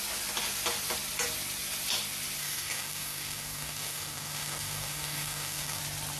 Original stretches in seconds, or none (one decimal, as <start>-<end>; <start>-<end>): 0.0-2.4; 5.8-6.2